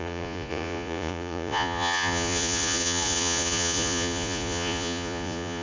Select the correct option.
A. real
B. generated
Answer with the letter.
B